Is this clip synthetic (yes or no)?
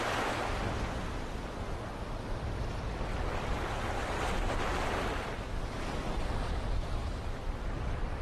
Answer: yes